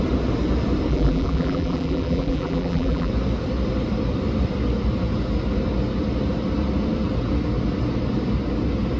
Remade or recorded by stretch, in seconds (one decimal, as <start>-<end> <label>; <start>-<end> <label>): 0.0-0.9 recorded; 0.9-3.1 remade; 3.1-9.0 recorded